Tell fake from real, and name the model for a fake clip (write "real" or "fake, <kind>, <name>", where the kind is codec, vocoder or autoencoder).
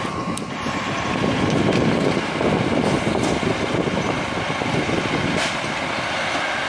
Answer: real